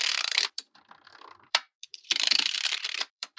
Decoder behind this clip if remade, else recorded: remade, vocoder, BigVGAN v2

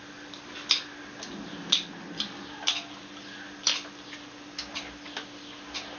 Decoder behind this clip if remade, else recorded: recorded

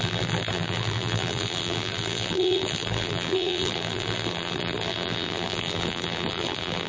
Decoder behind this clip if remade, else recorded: remade, vocoder, BigVGAN v2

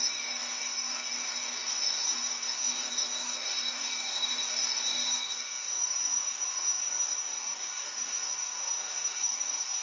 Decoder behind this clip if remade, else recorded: remade, codec, DAC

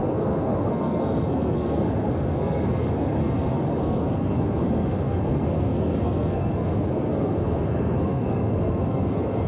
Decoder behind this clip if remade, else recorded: remade, codec, SNAC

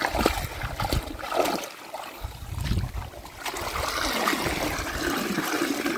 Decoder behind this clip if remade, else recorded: recorded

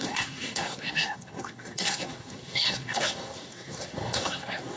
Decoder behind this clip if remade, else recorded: remade, codec, SNAC